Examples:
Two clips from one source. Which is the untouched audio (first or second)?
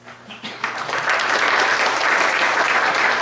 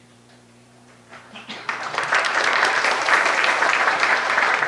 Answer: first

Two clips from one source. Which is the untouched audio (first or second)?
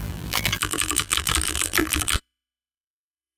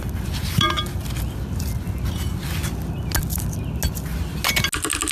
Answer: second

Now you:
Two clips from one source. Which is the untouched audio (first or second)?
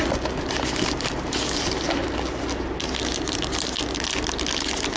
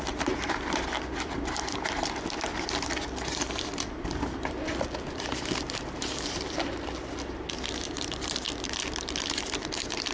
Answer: first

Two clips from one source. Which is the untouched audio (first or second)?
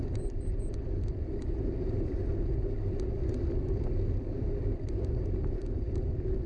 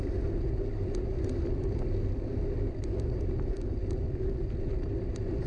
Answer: second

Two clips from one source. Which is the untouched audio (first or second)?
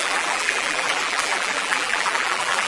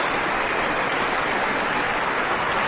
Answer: second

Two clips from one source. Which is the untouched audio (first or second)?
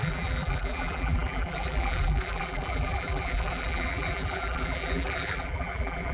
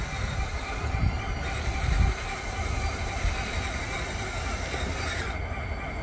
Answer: second